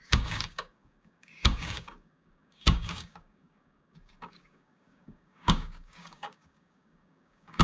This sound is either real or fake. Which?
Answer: fake